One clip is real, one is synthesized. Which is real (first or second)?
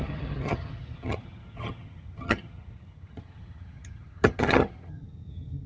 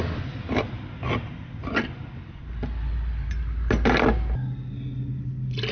second